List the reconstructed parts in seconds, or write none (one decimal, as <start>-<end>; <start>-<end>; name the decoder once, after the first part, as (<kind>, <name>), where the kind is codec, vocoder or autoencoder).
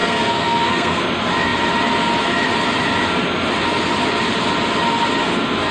0.0-1.0 (codec, SNAC)